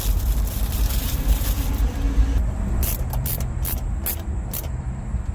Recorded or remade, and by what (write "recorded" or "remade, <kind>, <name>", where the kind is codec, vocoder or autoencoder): remade, vocoder, BigVGAN v2